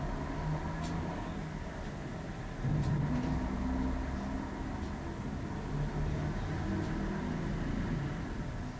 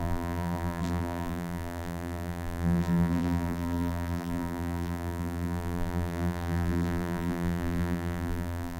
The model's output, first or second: second